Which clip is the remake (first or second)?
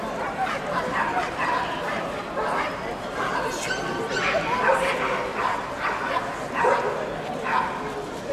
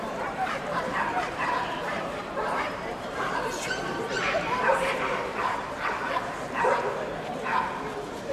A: second